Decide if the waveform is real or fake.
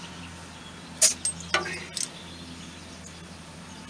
real